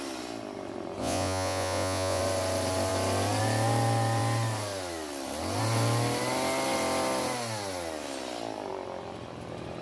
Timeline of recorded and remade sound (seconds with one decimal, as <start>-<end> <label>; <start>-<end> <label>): 0.0-1.0 recorded; 1.0-2.2 remade; 2.2-9.8 recorded